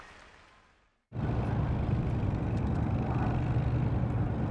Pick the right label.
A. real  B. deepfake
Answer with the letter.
A